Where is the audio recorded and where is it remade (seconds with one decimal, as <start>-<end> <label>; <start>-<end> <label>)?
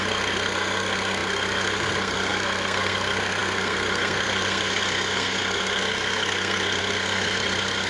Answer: 0.0-7.9 remade